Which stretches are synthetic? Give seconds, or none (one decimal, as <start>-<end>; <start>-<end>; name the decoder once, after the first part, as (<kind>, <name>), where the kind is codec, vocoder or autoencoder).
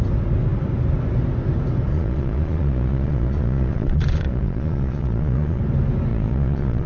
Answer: 1.9-5.6 (vocoder, Vocos); 6.1-6.9